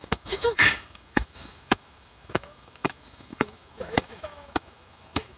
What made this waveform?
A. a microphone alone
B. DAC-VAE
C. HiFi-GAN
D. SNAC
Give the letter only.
B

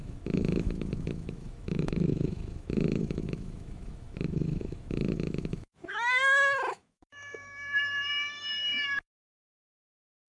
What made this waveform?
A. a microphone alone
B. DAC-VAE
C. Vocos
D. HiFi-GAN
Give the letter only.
B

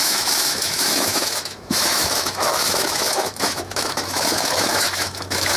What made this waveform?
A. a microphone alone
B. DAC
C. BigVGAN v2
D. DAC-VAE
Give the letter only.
D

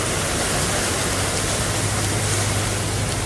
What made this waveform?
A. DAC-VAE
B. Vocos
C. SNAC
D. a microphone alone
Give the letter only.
D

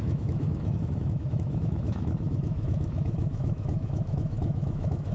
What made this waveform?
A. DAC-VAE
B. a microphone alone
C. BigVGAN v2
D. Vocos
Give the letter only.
A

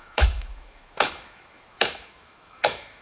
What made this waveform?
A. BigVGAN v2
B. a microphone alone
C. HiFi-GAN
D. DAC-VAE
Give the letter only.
D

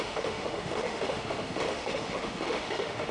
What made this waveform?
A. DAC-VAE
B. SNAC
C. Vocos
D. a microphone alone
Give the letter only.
A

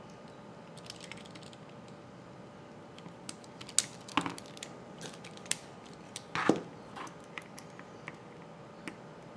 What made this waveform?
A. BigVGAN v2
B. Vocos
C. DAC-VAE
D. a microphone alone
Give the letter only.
D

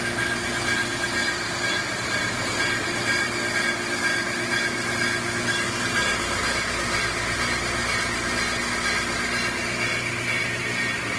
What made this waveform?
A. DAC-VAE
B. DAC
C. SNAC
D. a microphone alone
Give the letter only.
D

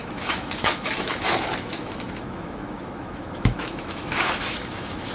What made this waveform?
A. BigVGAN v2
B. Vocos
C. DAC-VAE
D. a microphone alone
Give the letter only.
C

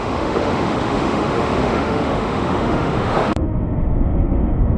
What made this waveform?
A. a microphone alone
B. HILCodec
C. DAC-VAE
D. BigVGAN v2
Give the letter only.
C